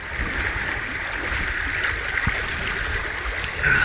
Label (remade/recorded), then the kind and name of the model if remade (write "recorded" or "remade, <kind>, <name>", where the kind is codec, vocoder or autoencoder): recorded